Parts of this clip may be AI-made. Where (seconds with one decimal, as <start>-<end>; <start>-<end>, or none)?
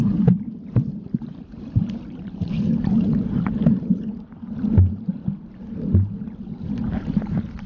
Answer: 0.0-5.2; 6.9-7.7